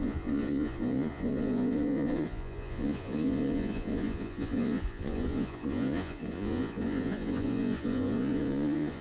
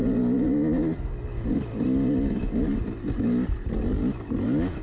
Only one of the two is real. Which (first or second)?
second